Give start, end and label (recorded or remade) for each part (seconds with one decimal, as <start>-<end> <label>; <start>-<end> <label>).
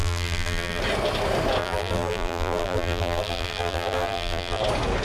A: 0.0-0.8 remade; 0.8-1.6 recorded; 1.6-4.6 remade; 4.6-5.0 recorded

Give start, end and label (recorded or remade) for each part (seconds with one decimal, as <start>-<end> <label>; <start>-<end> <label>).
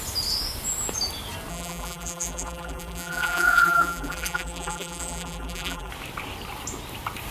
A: 0.0-1.5 recorded; 1.5-5.9 remade; 5.9-7.3 recorded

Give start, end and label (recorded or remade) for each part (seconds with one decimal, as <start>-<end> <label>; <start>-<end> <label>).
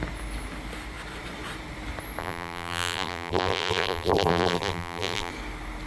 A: 0.0-2.2 recorded; 2.2-5.3 remade; 5.3-5.9 recorded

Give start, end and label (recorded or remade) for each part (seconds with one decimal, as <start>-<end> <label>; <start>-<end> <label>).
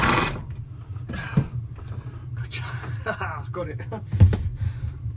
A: 0.0-5.2 remade